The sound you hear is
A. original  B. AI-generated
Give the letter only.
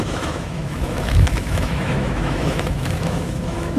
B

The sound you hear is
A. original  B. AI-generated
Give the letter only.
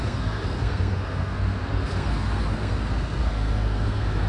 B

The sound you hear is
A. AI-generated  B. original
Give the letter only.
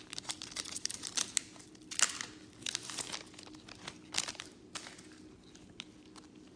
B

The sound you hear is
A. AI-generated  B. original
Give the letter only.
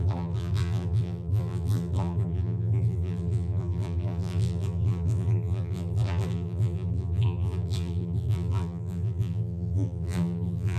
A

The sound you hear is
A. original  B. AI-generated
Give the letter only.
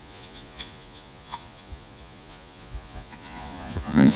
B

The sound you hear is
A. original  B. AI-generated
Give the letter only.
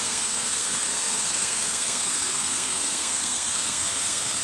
B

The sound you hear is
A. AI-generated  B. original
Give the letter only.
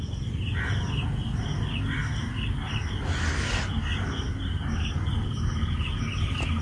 B